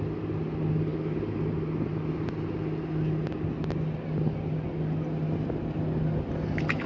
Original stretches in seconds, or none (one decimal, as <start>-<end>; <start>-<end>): 0.0-6.9